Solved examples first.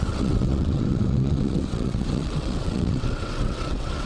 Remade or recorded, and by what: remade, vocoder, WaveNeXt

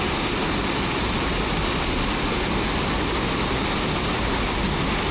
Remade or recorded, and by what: recorded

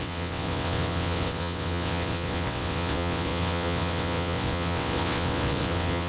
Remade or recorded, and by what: remade, vocoder, WaveNeXt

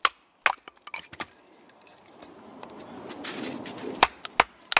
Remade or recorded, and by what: recorded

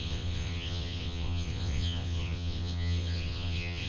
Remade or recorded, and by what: remade, vocoder, WaveNeXt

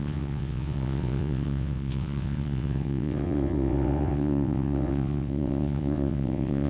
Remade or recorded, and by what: remade, vocoder, WaveNeXt